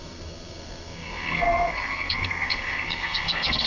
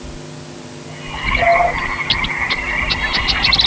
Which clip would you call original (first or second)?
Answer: second